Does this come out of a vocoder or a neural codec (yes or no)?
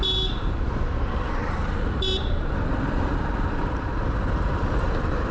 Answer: no